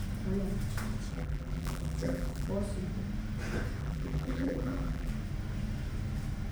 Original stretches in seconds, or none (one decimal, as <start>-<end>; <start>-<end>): 0.0-1.1; 2.5-3.8; 5.1-6.5

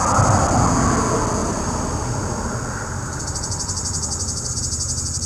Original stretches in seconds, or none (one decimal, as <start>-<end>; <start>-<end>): 0.0-1.4; 4.6-5.3

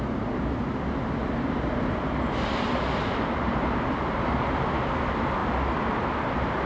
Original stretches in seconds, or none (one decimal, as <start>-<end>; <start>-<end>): 0.0-3.5; 4.4-5.4; 6.3-6.7